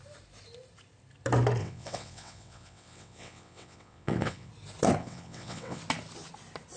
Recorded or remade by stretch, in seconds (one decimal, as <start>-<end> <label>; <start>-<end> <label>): 0.0-1.6 recorded; 1.6-4.5 remade; 4.5-5.0 recorded; 5.0-5.8 remade; 5.8-6.8 recorded